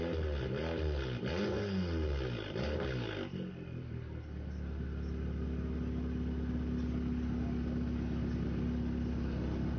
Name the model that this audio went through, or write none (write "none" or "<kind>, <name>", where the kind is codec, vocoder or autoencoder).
none